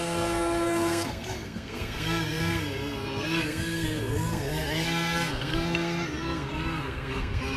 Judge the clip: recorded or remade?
remade